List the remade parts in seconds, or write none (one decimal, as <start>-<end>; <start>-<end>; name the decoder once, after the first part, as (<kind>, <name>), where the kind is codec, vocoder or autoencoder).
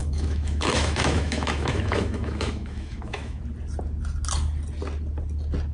0.0-3.4 (autoencoder, DAC-VAE)